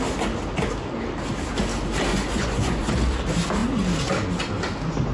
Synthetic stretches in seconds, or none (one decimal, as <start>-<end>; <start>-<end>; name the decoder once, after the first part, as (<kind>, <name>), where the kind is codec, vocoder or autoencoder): 2.1-2.9 (vocoder, Vocos)